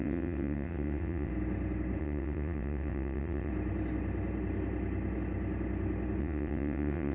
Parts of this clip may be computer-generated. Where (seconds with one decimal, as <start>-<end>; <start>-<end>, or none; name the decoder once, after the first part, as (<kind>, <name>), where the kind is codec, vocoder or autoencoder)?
0.0-1.3 (vocoder, WaveNeXt); 2.0-3.5; 6.2-7.1